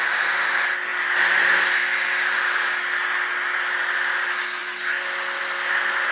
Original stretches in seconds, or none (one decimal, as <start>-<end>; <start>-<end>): 0.0-6.1